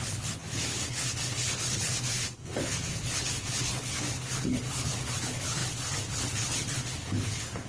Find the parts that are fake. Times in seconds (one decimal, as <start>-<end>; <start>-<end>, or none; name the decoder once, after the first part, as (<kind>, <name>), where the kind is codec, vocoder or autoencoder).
0.0-7.7 (codec, HILCodec)